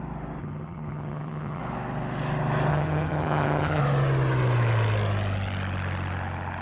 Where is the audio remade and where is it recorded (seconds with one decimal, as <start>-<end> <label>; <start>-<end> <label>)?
0.0-0.4 recorded; 0.4-1.6 remade; 1.6-2.7 recorded; 2.7-3.8 remade; 3.8-6.6 recorded